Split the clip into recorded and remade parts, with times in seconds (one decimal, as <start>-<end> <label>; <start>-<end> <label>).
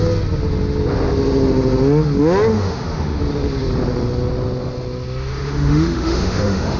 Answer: 0.0-2.5 recorded; 2.5-3.2 remade; 3.2-5.3 recorded; 5.3-6.8 remade